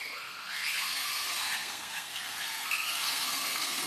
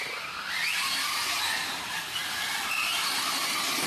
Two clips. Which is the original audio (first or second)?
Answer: second